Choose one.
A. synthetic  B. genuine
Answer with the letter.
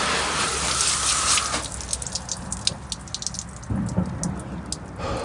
B